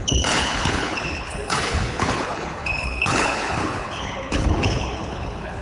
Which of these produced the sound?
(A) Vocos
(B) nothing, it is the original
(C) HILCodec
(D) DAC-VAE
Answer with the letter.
C